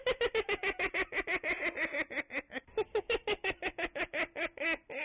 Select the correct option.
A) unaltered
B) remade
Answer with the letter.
A